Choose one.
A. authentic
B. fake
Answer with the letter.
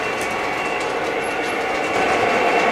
A